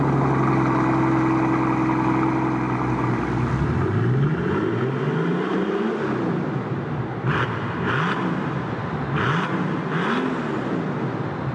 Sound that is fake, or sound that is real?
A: real